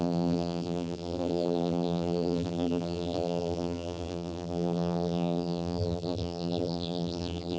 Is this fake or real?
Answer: fake